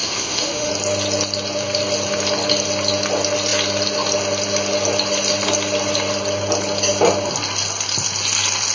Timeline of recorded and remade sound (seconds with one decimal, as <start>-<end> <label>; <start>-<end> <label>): 0.0-0.7 remade; 0.7-8.7 recorded